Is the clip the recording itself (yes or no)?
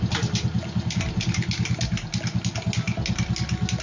yes